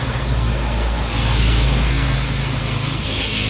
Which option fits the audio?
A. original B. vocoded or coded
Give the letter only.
B